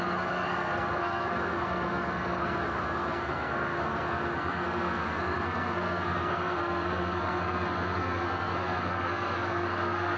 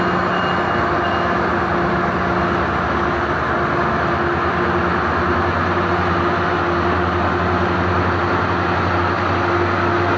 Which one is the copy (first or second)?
first